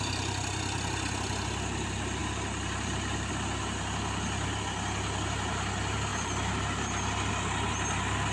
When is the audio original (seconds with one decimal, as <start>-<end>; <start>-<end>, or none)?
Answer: 0.0-2.2; 3.3-8.3